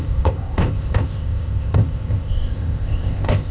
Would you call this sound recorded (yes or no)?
no